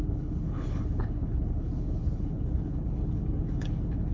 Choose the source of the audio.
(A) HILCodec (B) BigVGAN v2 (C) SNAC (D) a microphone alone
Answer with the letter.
A